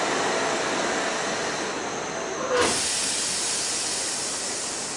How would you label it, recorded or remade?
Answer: recorded